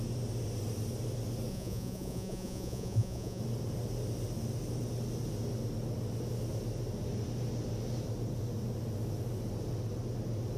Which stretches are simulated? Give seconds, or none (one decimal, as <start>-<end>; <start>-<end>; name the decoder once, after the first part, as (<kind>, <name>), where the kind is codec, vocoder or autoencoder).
1.5-3.4 (vocoder, Vocos)